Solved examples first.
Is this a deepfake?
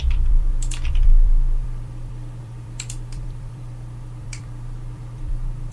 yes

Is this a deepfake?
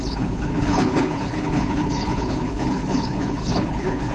yes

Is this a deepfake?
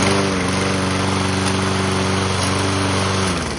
no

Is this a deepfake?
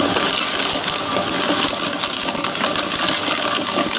no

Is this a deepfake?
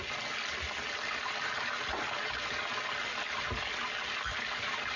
no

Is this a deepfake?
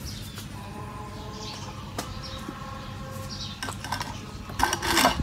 no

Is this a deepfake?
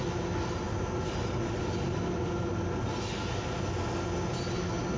no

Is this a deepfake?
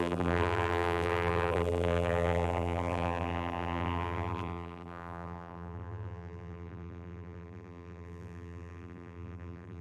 yes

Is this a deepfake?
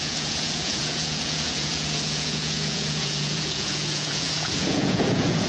yes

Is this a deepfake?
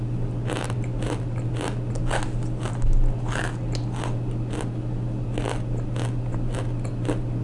no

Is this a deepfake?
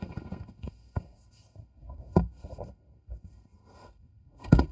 yes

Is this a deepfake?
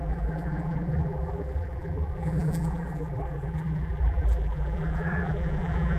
yes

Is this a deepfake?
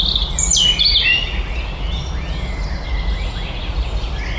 no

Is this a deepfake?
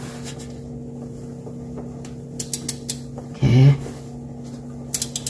no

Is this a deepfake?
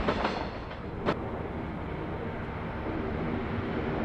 no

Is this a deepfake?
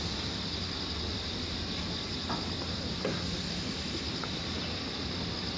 no